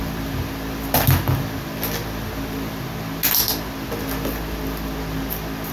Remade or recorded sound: recorded